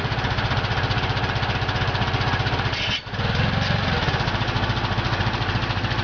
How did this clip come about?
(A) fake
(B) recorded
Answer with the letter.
B